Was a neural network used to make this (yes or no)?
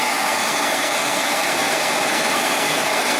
yes